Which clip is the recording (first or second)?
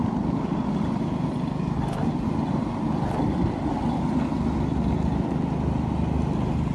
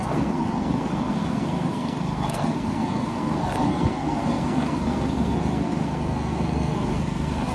first